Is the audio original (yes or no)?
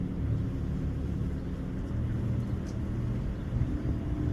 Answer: yes